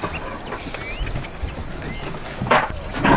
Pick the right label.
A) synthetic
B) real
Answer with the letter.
B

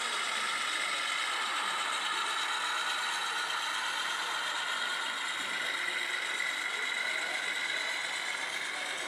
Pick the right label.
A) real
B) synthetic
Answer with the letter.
A